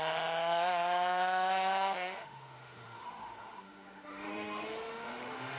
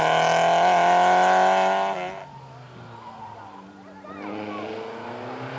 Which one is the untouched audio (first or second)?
second